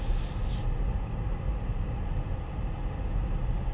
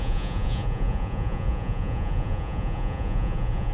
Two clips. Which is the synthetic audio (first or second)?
second